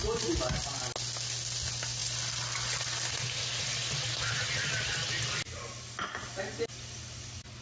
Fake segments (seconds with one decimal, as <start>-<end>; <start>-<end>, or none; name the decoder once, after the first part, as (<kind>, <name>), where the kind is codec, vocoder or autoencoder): none